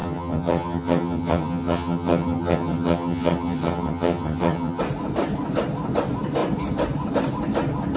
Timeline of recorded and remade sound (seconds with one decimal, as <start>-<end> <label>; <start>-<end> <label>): 0.0-4.8 remade; 4.8-8.0 recorded